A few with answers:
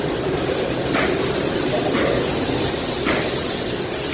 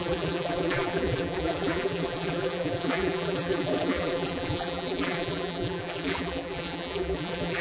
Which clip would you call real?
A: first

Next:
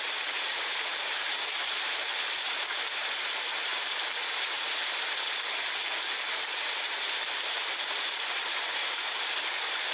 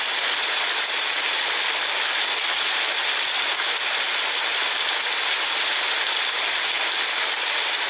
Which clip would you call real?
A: second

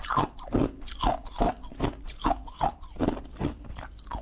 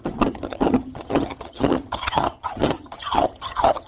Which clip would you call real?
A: first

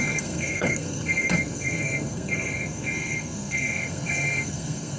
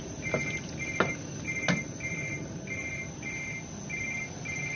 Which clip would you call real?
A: second